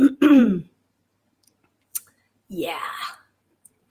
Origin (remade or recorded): remade